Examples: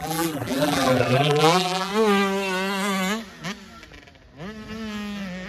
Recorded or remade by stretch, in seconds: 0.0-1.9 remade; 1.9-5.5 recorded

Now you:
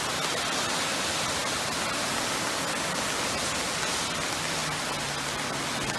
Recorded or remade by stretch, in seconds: 0.0-6.0 recorded

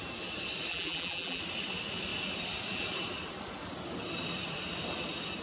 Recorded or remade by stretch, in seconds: 0.0-0.7 recorded; 0.7-1.4 remade; 1.4-5.4 recorded